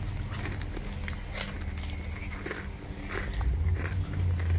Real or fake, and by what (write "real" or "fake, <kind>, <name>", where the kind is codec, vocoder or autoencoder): real